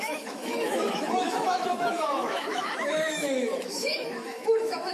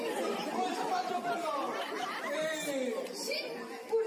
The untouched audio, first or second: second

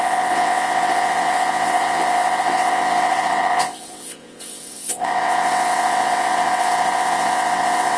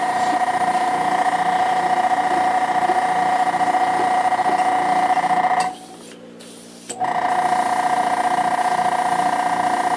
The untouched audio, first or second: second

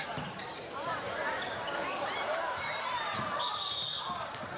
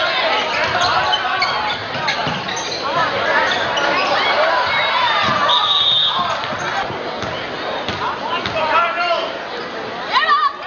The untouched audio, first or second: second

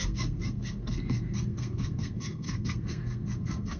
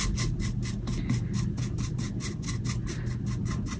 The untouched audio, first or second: second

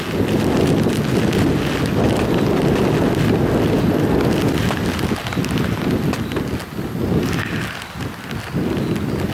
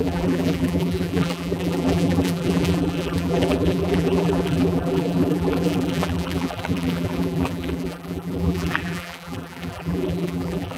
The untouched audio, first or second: first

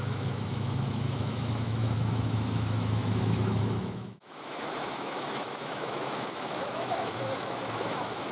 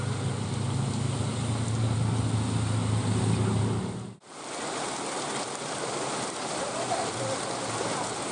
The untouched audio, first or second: second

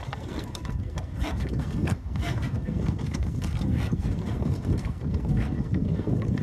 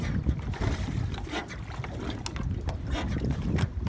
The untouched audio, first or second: second